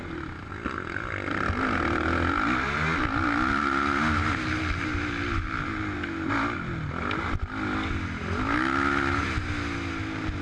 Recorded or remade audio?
recorded